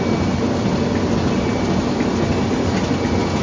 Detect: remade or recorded recorded